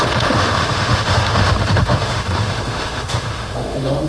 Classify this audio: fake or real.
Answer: fake